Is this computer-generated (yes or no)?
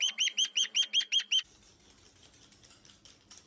no